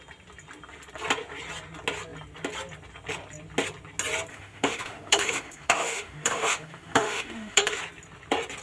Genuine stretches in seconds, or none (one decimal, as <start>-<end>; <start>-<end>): 0.0-4.3; 7.8-8.6